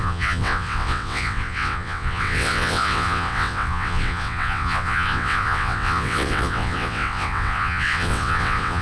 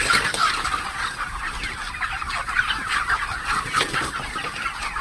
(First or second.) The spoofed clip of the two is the first